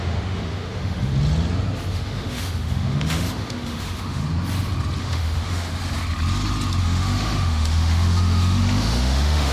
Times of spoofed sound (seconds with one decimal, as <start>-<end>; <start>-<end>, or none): 0.0-1.1; 1.9-4.2; 5.0-5.7; 6.8-9.5